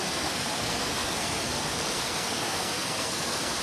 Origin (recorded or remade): remade